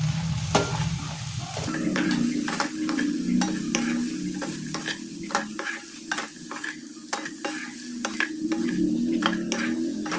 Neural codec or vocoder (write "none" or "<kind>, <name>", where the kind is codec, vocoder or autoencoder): none